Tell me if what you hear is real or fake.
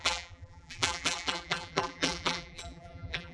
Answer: fake